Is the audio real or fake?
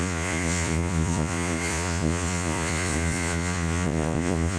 fake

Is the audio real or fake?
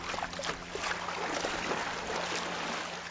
real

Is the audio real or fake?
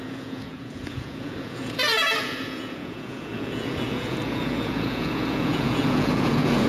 fake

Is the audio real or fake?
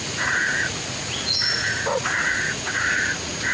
fake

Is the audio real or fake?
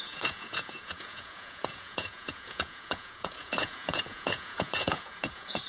fake